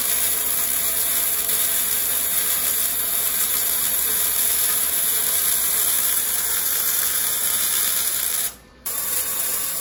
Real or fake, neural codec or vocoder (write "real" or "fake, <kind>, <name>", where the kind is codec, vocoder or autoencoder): fake, vocoder, BigVGAN v2